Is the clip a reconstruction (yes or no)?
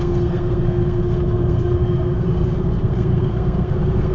yes